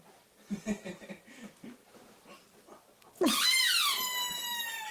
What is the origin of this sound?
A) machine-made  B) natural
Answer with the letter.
A